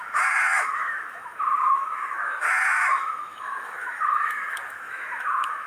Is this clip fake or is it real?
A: fake